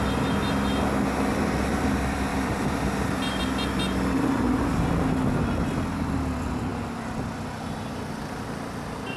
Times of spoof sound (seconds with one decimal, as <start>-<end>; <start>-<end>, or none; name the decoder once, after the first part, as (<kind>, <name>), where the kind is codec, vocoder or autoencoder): 2.3-3.4 (vocoder, BigVGAN v2); 4.6-5.2